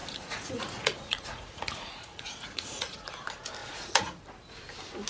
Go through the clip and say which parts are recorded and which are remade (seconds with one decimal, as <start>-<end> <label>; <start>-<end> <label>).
0.0-3.1 remade; 3.1-3.6 recorded; 3.6-4.2 remade; 4.2-5.1 recorded